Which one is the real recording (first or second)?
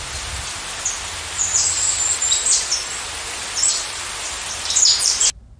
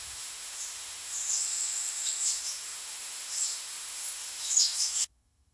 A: first